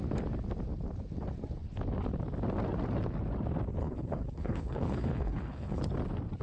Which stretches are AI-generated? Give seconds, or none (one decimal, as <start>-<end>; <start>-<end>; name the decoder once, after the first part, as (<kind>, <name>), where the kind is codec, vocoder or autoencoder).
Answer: 3.8-5.8 (codec, HILCodec)